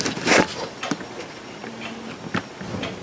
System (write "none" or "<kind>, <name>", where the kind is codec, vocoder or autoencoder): none